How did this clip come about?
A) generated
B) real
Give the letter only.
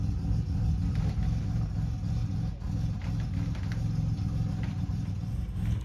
B